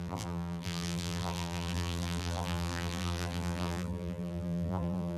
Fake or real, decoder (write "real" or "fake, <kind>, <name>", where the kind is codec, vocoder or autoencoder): fake, vocoder, BigVGAN v2